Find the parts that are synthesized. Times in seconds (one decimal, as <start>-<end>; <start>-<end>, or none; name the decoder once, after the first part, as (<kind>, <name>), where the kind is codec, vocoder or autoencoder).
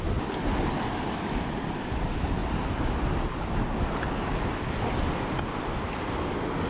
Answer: none